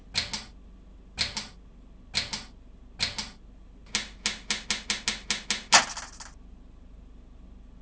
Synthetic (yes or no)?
no